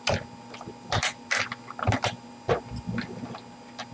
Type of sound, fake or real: real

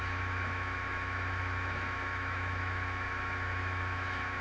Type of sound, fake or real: fake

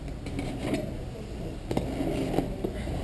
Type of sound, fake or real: real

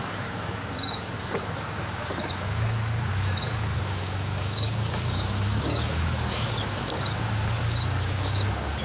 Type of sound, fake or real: fake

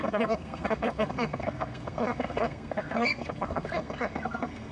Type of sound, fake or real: fake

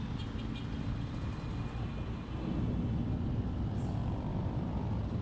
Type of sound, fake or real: real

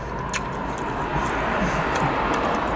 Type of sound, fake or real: real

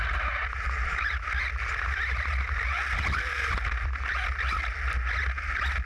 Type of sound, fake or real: real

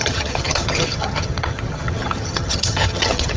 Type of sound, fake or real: fake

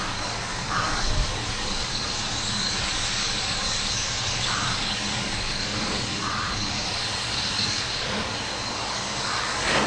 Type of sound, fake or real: fake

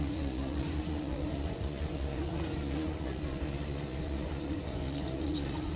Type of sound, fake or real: fake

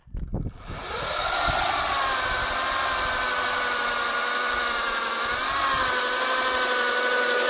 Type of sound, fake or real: real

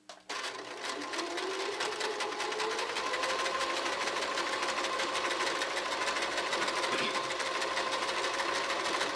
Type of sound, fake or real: real